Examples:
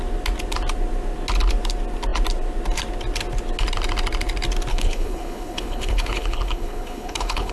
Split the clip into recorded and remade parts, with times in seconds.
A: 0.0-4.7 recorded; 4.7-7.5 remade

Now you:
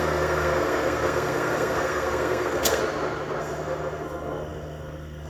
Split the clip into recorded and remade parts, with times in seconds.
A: 0.0-2.8 remade; 2.8-3.4 recorded; 3.4-5.3 remade

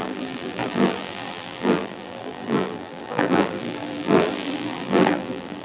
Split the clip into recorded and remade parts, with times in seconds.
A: 0.0-5.6 remade

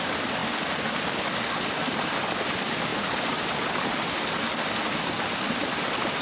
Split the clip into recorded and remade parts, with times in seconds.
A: 0.0-6.2 recorded

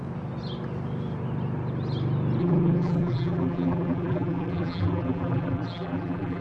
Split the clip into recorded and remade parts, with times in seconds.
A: 0.0-2.4 recorded; 2.4-6.4 remade

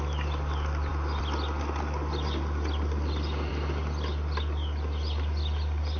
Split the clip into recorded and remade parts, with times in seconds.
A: 0.0-6.0 recorded